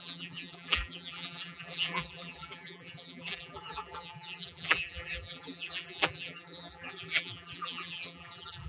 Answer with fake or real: fake